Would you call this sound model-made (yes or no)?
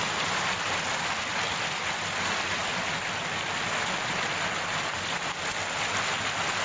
no